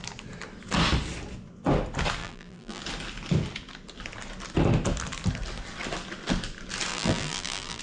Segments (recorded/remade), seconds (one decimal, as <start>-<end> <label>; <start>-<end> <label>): 0.0-2.2 recorded; 2.2-2.8 remade; 2.8-6.9 recorded; 6.9-7.8 remade